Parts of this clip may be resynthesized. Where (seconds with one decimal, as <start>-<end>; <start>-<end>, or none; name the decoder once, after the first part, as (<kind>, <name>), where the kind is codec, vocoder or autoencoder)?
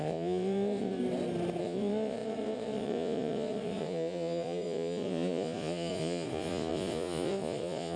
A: 0.0-1.0 (vocoder, Vocos); 1.6-8.0